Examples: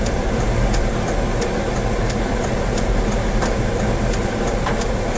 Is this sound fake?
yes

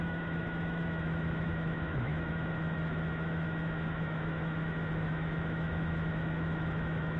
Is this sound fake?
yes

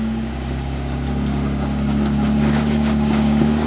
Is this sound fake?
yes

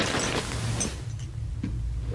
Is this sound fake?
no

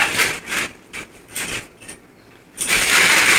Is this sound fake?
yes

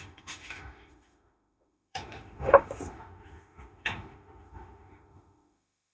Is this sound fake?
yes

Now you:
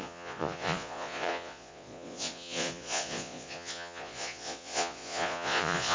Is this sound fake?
yes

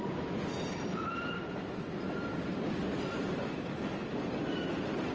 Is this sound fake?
no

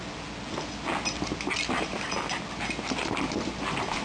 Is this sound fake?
no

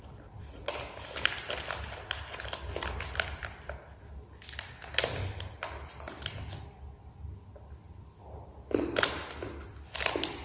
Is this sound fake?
no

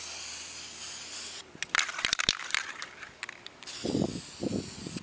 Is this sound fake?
no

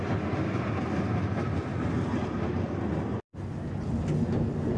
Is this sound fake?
no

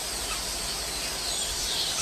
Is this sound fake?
no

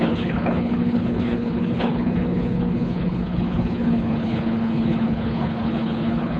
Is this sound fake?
yes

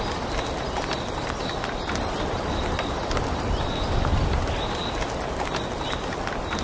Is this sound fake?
no